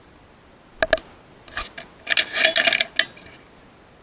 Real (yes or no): yes